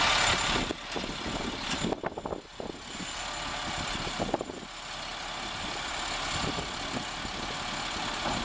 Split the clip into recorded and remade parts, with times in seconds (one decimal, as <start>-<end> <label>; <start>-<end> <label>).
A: 0.0-8.4 recorded